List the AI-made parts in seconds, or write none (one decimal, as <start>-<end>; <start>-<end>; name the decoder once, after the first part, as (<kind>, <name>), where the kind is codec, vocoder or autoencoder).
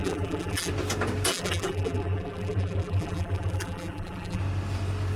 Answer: 0.0-0.7 (vocoder, BigVGAN v2); 1.3-4.4